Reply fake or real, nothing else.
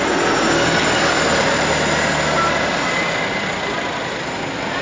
real